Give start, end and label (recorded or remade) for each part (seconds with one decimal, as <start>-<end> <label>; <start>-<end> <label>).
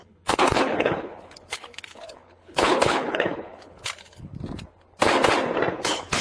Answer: 0.0-4.3 remade; 4.3-5.7 recorded; 5.7-6.2 remade